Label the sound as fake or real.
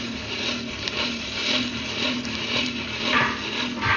fake